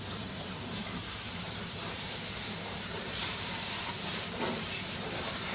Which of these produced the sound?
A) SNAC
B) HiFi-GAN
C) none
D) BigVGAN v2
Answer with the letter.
D